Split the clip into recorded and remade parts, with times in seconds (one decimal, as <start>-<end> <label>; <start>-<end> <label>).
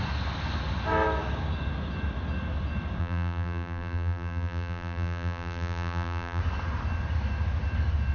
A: 0.0-3.0 recorded; 3.0-6.4 remade; 6.4-8.1 recorded